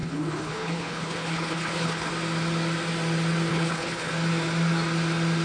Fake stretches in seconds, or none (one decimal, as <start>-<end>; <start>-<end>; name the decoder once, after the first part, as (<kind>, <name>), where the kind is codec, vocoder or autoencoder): 0.0-2.1 (codec, HILCodec); 3.5-4.1